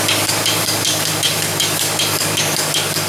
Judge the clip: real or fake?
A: fake